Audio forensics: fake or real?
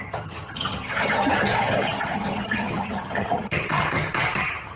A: fake